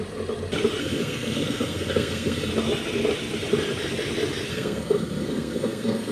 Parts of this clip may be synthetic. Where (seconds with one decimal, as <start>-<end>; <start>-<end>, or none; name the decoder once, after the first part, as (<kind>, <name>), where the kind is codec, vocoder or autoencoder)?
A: 0.8-2.5 (codec, SNAC); 4.5-6.1